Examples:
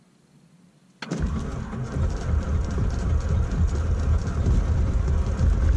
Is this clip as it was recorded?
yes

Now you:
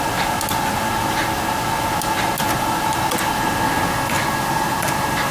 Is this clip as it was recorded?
yes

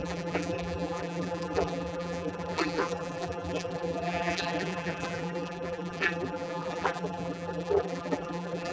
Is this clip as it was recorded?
no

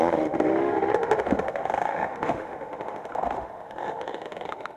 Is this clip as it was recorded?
no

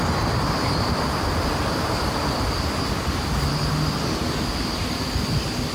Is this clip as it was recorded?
yes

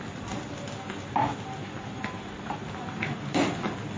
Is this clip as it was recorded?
yes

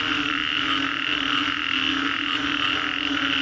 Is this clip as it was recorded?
yes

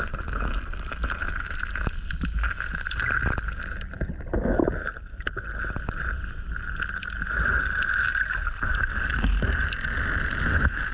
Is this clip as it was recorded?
yes